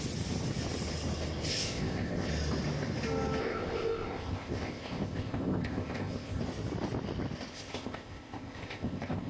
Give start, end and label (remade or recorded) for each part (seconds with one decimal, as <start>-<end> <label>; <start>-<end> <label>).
0.0-1.5 recorded; 1.5-2.3 remade; 2.3-3.4 recorded; 3.4-6.4 remade; 6.4-7.5 recorded; 7.5-9.3 remade